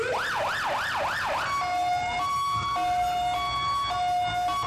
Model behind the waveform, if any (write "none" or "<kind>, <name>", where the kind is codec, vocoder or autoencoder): none